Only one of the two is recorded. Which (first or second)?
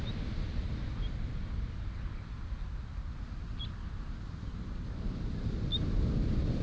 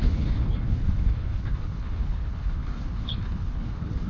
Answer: first